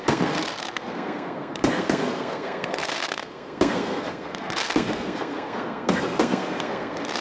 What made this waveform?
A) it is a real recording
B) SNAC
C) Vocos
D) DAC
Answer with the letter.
B